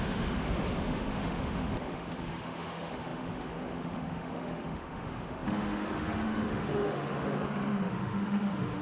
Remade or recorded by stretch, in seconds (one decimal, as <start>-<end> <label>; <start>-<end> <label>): 0.0-7.4 remade; 7.4-7.9 recorded; 7.9-8.8 remade